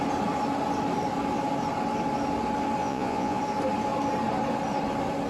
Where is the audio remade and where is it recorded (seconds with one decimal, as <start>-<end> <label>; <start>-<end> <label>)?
0.0-2.8 recorded; 2.8-3.4 remade; 3.4-5.3 recorded